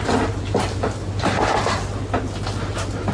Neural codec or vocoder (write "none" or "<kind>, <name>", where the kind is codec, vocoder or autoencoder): none